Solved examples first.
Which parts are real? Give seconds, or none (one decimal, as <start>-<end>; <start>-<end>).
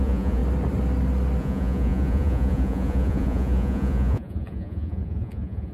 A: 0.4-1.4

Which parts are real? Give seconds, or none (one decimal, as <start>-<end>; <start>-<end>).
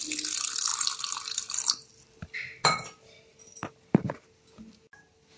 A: 0.0-5.4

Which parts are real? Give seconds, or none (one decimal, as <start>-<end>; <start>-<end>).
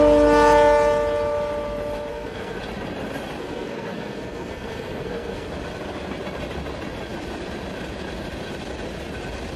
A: 0.0-2.1; 2.6-3.4; 5.5-9.6